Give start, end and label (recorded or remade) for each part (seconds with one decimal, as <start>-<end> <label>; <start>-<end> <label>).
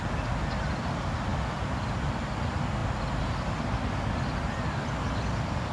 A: 0.0-5.7 recorded